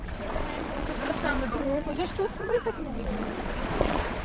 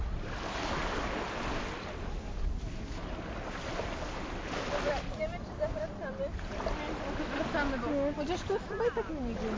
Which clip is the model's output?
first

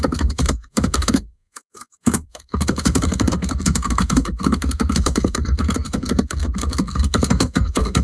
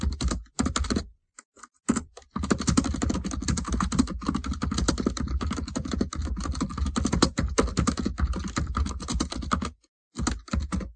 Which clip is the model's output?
first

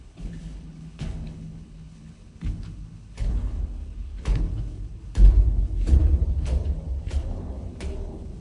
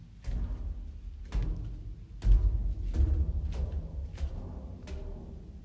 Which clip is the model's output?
first